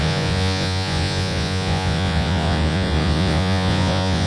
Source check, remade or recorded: remade